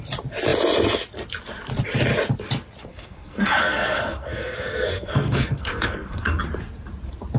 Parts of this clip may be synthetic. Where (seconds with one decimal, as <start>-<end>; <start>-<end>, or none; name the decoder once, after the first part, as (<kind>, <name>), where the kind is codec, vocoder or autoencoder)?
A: 2.9-6.4 (codec, SNAC)